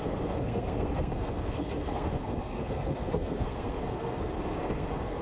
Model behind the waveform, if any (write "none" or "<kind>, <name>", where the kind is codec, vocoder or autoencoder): codec, SNAC